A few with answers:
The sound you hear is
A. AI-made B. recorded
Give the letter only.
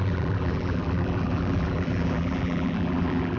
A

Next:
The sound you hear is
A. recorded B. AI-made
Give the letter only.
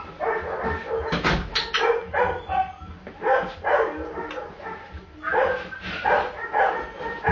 A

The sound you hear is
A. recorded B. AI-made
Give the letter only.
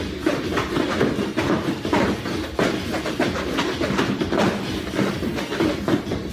A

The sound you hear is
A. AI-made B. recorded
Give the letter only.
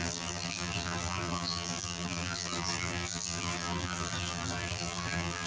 A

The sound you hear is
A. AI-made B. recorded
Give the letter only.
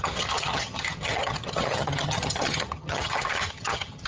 A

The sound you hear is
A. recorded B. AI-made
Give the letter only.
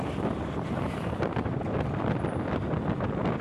A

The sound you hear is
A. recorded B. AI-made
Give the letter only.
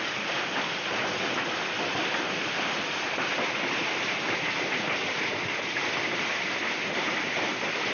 A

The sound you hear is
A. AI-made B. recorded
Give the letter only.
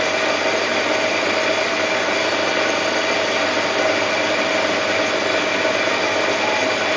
B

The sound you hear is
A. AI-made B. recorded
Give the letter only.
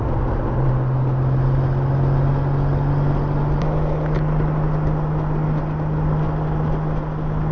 B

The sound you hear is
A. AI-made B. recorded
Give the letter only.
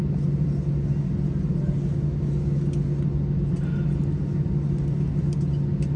B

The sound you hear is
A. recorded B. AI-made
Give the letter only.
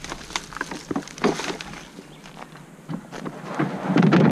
A